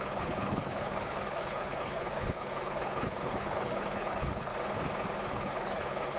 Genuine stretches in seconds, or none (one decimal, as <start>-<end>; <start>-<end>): 4.5-5.3